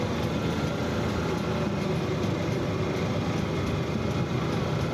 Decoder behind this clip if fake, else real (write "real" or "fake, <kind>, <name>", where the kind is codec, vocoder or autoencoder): real